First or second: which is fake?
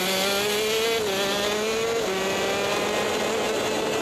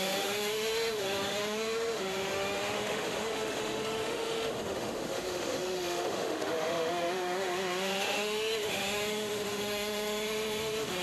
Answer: second